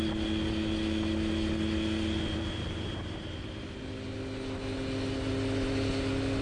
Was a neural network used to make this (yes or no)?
no